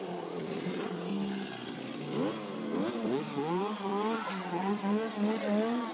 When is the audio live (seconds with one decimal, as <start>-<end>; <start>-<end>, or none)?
1.1-2.9